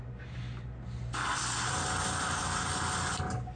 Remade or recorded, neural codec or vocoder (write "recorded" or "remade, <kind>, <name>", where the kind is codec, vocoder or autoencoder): recorded